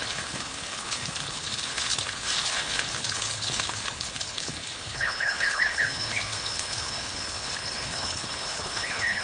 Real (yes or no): no